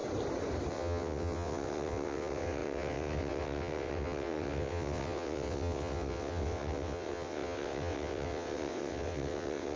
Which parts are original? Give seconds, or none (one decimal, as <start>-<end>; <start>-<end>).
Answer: 0.0-0.7